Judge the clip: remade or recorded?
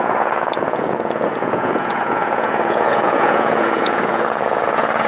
remade